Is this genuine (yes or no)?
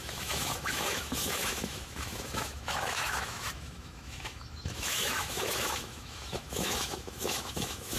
no